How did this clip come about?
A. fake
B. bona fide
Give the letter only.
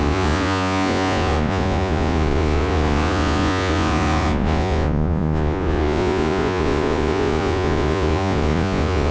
A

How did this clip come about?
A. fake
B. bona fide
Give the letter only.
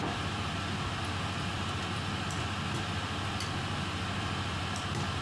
B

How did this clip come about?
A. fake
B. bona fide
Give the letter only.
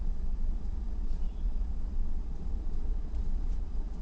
A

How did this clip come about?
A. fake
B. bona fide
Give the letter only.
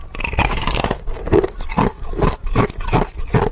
B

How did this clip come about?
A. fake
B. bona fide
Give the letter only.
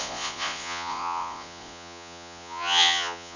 A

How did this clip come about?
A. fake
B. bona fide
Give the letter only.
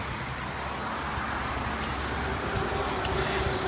B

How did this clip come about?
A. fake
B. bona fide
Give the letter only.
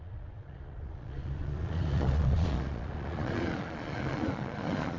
A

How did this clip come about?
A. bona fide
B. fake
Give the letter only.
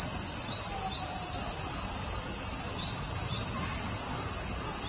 A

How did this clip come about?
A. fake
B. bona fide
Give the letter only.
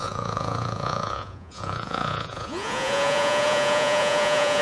A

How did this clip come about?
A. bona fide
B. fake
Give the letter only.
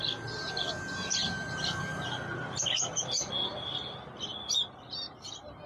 A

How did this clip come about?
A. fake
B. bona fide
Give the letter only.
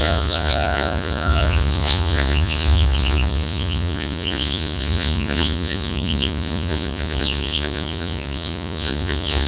A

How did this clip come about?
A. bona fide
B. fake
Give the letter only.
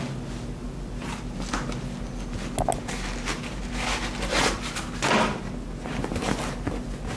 A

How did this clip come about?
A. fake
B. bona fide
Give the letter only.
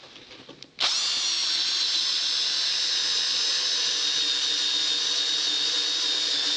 B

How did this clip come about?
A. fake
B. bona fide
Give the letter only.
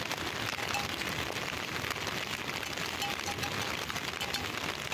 B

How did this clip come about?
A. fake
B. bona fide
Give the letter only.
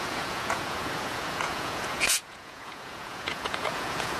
A